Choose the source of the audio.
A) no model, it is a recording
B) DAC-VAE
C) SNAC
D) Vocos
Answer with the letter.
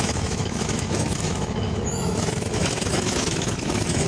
B